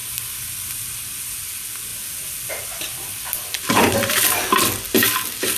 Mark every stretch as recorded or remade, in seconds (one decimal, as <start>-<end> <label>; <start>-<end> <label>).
0.0-0.8 remade; 0.8-2.9 recorded; 2.9-3.5 remade; 3.5-5.6 recorded